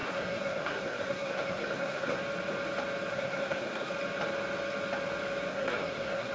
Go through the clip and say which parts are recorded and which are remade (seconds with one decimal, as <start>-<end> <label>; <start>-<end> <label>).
0.0-2.2 remade; 2.2-3.1 recorded; 3.1-3.9 remade; 3.9-5.5 recorded; 5.5-6.3 remade